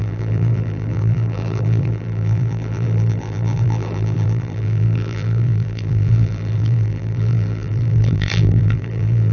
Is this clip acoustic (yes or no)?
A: no